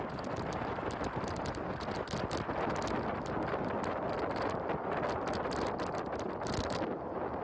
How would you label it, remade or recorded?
recorded